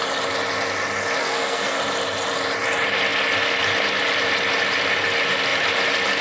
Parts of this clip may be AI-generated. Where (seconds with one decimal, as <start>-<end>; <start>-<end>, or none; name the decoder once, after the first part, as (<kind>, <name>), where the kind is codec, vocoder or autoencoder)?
1.2-1.8 (codec, SNAC)